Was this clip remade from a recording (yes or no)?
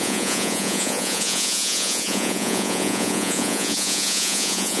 yes